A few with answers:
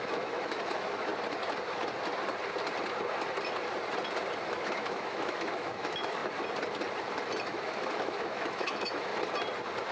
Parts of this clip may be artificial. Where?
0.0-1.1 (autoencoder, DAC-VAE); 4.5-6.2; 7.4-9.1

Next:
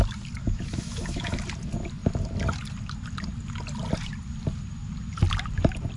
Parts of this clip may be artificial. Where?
0.4-1.4 (autoencoder, DAC-VAE)

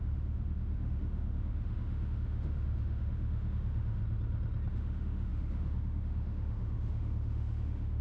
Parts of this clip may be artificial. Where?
0.0-4.0 (autoencoder, DAC-VAE); 4.7-8.0